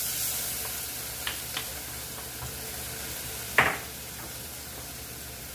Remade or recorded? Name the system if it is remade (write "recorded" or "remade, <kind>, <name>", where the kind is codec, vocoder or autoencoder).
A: recorded